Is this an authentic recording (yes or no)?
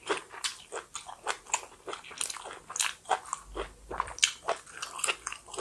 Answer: yes